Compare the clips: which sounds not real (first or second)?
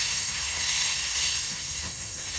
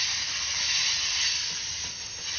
first